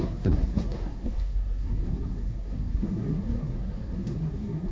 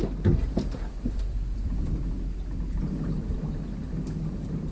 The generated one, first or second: first